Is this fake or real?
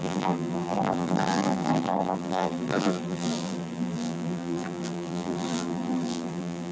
fake